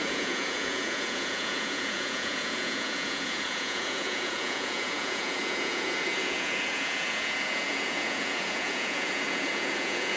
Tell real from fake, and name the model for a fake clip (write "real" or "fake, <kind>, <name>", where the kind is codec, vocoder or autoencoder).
fake, vocoder, Vocos